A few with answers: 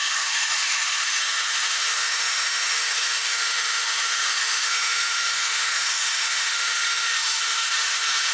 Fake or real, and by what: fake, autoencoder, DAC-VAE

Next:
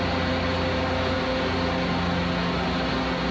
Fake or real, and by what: real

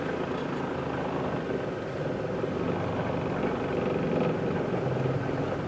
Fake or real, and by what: real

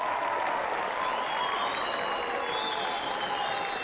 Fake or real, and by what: real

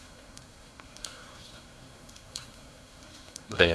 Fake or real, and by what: fake, codec, SNAC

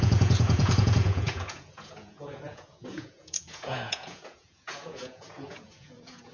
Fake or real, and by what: fake, vocoder, Vocos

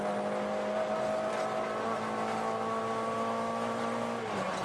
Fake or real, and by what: real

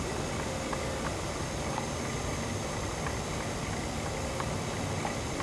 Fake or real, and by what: real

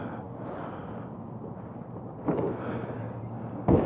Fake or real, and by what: real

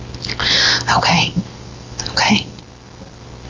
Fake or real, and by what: real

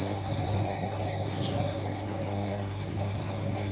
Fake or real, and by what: fake, codec, SNAC